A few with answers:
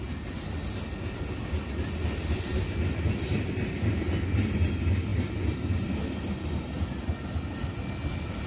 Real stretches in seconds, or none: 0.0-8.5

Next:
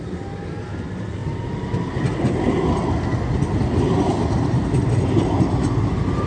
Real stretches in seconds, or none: 0.0-6.3

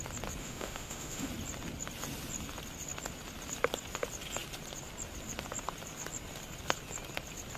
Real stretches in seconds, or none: 0.0-0.4; 1.3-7.6

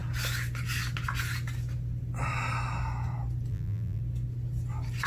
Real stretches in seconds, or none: 0.0-3.5; 4.0-5.1

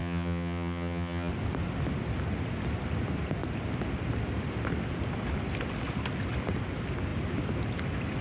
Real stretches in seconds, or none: 1.3-8.2